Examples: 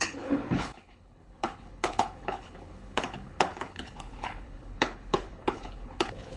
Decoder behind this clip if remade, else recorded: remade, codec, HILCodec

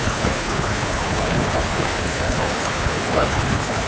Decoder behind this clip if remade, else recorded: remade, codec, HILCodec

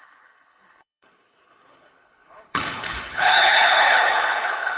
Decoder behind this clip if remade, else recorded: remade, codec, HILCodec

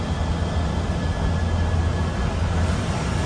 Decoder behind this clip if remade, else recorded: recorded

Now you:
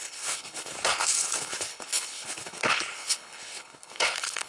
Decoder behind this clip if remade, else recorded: remade, codec, HILCodec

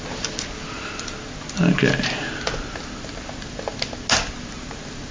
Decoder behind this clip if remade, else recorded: recorded